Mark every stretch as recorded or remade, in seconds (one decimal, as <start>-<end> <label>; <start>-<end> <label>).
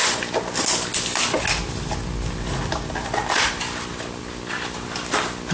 0.0-5.5 recorded